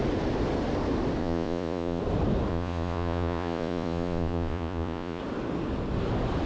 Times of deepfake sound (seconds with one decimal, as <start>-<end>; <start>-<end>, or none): 1.2-2.0; 2.5-5.2